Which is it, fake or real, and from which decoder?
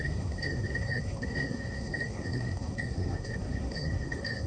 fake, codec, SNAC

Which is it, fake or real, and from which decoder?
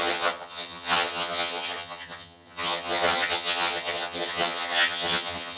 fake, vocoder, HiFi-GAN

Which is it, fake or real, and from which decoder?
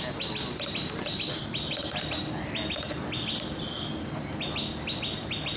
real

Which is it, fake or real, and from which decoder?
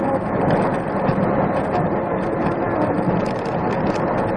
real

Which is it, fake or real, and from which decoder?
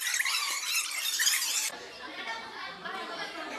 fake, vocoder, BigVGAN v2